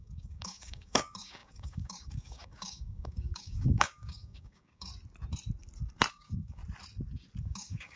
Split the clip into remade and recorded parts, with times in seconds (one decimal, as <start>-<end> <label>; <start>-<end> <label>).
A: 0.0-4.9 remade; 4.9-6.1 recorded; 6.1-6.6 remade; 6.6-7.4 recorded; 7.4-8.0 remade

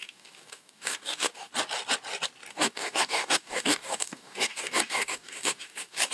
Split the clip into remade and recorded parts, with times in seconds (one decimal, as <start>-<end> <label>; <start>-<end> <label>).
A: 0.0-1.5 remade; 1.5-2.5 recorded; 2.5-6.1 remade